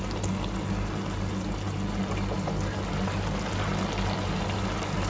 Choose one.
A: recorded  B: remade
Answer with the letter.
A